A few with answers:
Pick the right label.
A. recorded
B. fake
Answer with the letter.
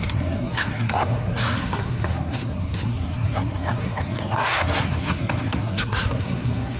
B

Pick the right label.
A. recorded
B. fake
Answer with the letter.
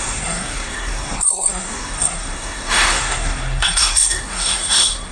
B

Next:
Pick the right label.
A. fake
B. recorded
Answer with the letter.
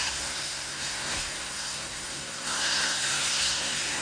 A